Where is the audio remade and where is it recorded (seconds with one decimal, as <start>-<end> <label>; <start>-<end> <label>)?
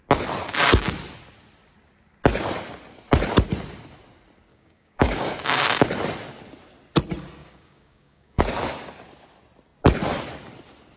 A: 0.0-4.5 recorded; 4.5-5.8 remade; 5.8-7.4 recorded; 7.4-8.4 remade; 8.4-11.0 recorded